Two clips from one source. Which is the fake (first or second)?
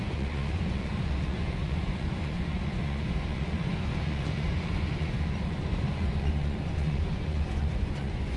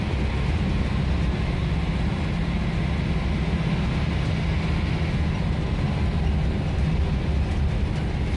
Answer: first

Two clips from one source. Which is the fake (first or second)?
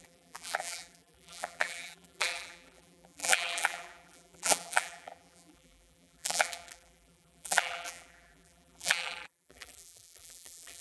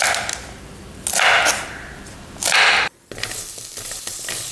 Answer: first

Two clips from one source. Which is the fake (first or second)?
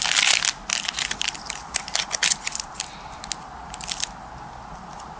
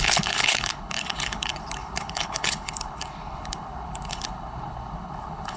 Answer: second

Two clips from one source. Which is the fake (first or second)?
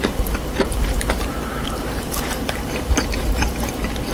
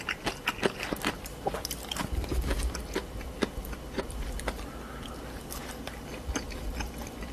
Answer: first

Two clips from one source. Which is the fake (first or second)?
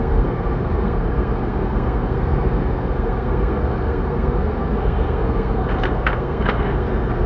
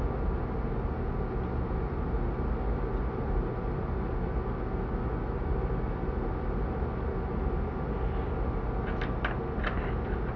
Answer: first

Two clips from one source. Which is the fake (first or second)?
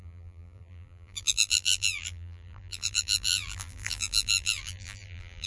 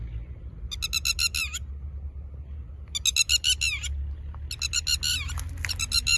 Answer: first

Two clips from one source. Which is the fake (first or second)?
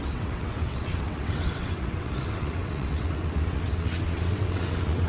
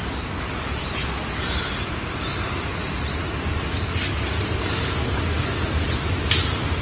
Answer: first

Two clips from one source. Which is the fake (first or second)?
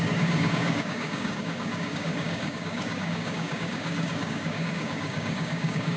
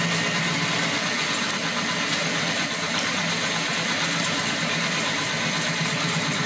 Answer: first